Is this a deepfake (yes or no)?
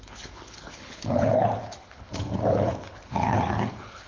yes